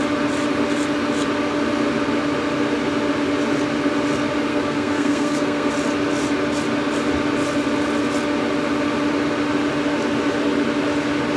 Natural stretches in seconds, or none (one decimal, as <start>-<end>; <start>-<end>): 0.0-4.5; 5.7-11.4